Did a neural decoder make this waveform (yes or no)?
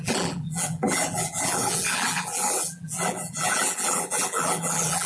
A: yes